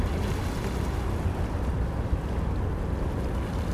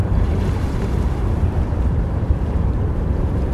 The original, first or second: first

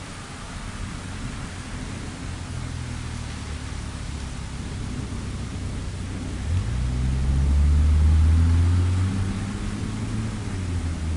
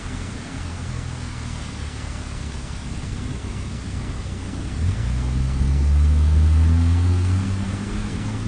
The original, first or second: first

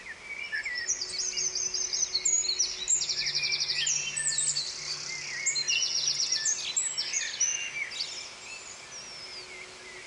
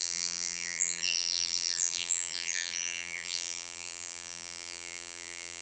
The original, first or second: first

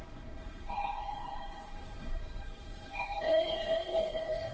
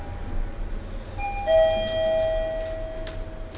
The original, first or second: second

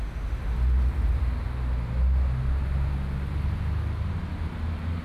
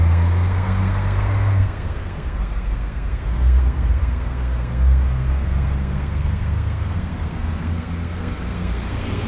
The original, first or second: first